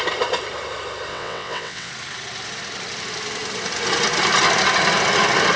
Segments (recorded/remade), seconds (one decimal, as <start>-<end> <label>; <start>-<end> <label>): 0.0-1.1 recorded; 1.1-1.9 remade; 1.9-5.6 recorded